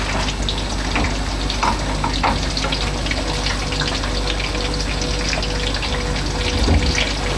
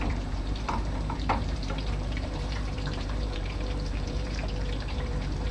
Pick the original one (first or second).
first